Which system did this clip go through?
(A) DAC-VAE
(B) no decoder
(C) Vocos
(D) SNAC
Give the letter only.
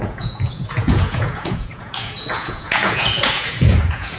C